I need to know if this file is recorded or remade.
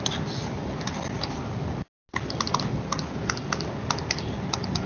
recorded